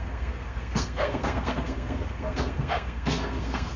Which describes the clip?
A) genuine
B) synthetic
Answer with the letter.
B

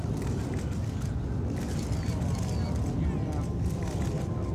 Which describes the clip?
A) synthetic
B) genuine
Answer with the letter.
B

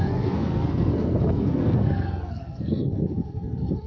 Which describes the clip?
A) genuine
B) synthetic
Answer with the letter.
B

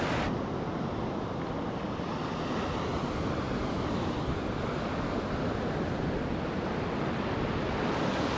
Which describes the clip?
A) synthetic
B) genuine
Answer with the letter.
B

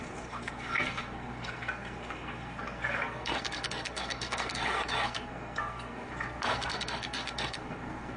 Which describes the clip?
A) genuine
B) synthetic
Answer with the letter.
B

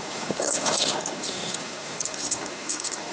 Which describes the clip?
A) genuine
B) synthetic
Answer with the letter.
B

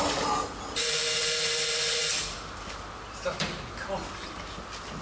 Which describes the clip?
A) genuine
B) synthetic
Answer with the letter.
A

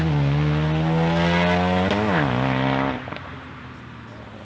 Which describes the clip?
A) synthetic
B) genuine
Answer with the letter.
B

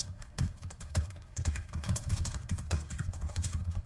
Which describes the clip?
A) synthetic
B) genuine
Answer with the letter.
A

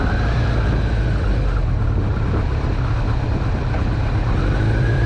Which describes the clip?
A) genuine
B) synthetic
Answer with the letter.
A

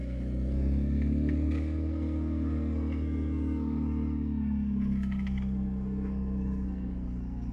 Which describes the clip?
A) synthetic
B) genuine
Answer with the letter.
A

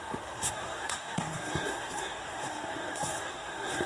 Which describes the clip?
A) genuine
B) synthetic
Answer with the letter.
B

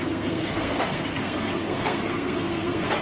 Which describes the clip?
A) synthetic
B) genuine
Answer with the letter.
A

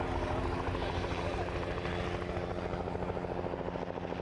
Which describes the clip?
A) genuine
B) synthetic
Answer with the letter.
A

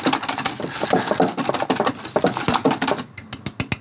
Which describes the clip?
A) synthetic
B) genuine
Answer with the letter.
B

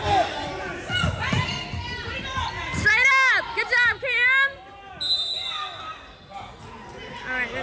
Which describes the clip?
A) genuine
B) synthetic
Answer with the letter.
A